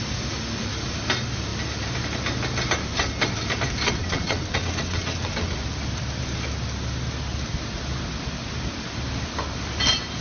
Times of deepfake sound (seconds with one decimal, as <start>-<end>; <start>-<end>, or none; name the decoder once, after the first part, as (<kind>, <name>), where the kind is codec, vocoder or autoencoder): 4.0-5.5 (vocoder, WaveNeXt)